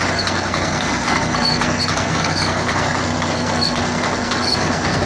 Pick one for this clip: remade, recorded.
remade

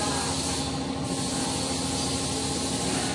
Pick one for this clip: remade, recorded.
recorded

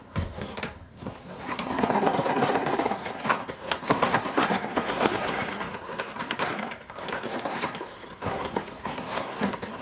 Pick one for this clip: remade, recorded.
remade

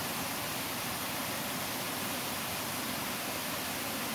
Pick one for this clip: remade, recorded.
recorded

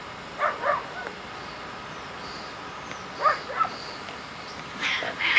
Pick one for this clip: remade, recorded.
recorded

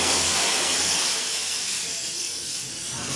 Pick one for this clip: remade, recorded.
remade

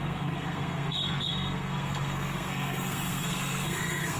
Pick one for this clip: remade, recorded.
remade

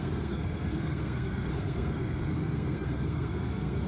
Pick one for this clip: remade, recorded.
remade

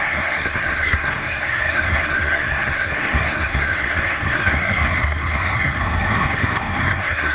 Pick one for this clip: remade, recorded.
remade